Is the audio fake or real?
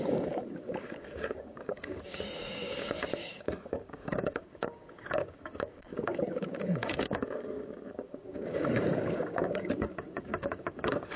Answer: fake